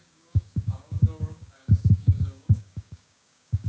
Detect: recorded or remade remade